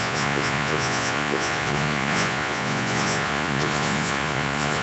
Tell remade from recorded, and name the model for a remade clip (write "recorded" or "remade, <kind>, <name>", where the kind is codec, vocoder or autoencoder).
remade, vocoder, Vocos